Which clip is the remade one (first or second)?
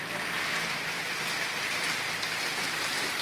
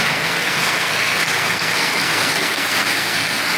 second